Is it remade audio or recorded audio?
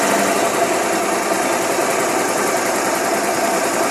remade